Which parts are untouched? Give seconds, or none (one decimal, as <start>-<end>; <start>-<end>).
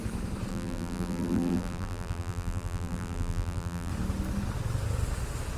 0.0-0.5; 3.9-5.6